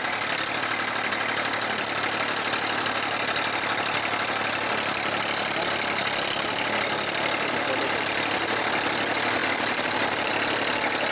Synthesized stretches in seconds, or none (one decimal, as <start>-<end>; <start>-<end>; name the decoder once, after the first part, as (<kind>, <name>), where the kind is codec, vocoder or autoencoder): 9.4-10.3 (vocoder, BigVGAN v2)